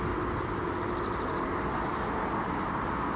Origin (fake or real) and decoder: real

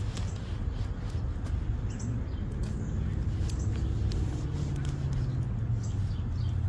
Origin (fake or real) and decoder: real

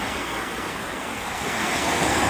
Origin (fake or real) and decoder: fake, codec, SNAC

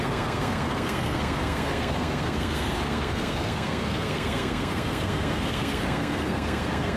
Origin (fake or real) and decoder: fake, codec, SNAC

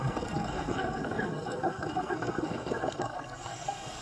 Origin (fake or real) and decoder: fake, codec, SNAC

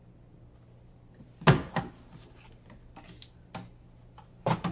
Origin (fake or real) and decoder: real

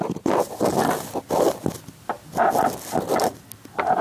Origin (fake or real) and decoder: real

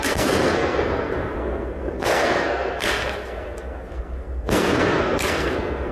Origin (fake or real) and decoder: fake, codec, SNAC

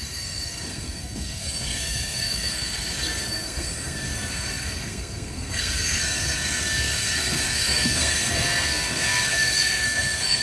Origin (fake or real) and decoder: fake, codec, SNAC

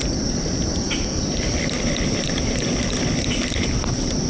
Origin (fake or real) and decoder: real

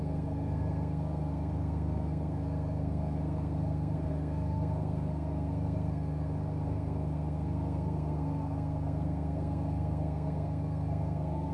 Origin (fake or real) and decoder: fake, codec, SNAC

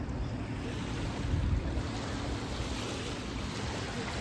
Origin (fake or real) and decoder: real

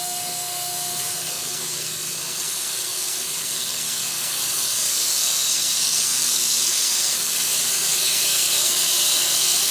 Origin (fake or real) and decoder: fake, codec, SNAC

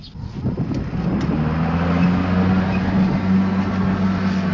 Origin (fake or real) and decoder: real